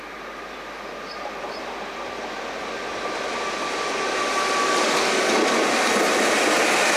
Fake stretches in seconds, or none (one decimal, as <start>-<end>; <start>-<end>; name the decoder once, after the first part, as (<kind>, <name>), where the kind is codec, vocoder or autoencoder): 4.6-5.3 (codec, DAC)

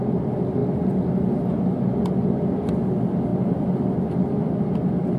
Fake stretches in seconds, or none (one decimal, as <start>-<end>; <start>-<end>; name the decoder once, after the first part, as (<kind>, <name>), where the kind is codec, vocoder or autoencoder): none

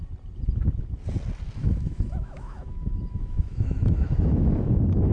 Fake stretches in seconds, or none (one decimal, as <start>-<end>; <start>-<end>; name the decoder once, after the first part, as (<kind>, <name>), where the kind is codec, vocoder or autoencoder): 1.6-5.1 (autoencoder, DAC-VAE)

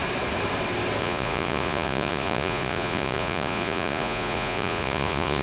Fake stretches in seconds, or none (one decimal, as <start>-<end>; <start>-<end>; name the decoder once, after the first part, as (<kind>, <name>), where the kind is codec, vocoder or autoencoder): 1.0-5.4 (vocoder, Vocos)